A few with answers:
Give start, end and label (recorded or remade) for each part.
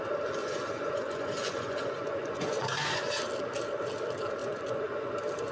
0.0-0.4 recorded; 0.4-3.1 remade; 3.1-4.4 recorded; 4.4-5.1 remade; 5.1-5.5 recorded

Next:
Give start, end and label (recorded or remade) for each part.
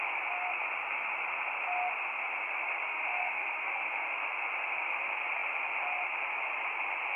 0.0-2.8 recorded; 2.8-4.0 remade; 4.0-7.2 recorded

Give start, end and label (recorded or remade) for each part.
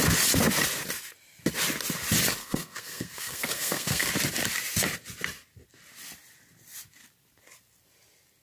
0.0-2.4 recorded; 2.4-4.1 remade; 4.1-8.4 recorded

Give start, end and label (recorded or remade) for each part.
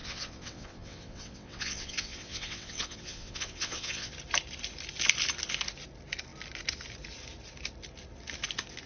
0.0-4.1 remade; 4.1-8.9 recorded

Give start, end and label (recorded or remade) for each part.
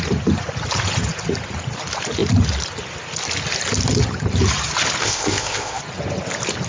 0.0-5.0 recorded; 5.0-5.8 remade; 5.8-6.7 recorded